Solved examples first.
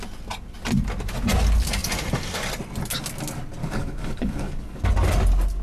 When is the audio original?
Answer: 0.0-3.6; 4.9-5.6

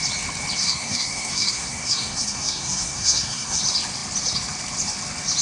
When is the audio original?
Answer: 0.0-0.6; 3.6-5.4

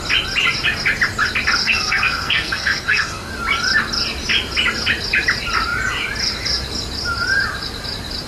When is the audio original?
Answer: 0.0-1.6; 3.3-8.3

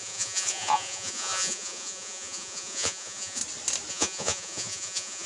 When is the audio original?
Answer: 3.4-3.9

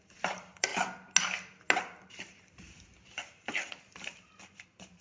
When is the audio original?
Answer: 0.7-1.8; 2.9-3.8